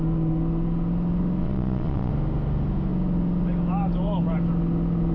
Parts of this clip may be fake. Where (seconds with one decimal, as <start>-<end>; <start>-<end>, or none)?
1.4-2.1